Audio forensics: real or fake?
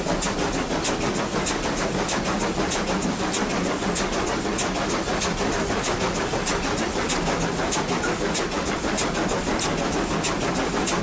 real